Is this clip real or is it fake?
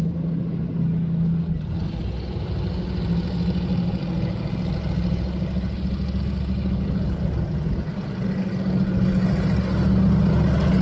real